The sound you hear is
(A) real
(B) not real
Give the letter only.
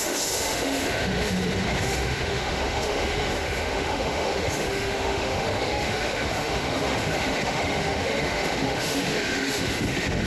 B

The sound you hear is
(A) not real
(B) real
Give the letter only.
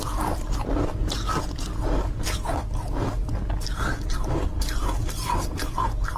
B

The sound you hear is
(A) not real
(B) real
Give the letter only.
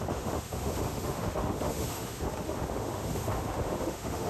A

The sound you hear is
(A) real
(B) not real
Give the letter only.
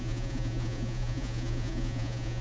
B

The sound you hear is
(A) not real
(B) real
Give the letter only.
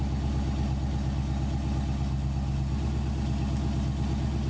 B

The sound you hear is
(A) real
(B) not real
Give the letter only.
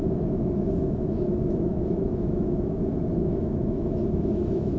B